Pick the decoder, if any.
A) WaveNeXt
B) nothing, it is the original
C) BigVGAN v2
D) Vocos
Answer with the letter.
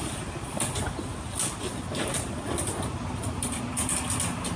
B